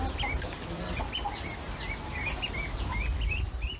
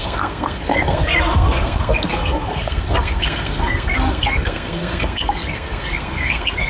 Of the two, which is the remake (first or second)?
second